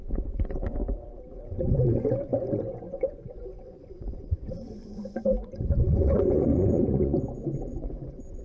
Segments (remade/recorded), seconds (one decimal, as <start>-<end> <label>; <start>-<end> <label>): 0.0-0.8 remade; 0.8-1.3 recorded; 1.3-8.4 remade